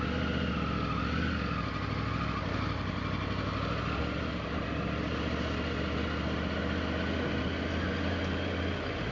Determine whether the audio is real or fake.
real